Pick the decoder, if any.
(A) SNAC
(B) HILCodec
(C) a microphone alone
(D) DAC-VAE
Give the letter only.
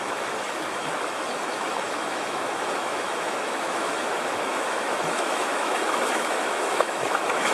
D